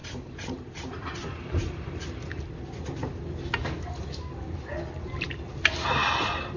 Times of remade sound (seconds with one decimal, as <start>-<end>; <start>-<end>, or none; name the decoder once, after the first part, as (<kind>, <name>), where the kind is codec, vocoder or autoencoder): 0.0-2.0 (vocoder, BigVGAN v2); 6.0-6.6